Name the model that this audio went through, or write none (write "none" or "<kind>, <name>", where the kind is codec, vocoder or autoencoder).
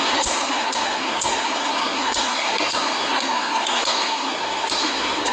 codec, SNAC